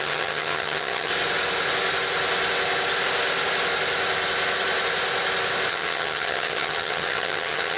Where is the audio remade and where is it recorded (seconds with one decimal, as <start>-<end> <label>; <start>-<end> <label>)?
0.0-1.1 remade; 1.1-5.7 recorded; 5.7-7.8 remade